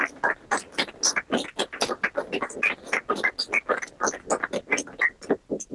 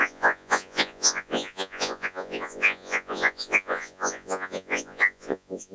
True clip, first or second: first